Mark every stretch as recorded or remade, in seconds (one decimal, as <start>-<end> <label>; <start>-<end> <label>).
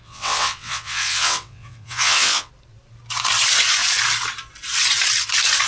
0.0-2.5 remade; 2.5-5.7 recorded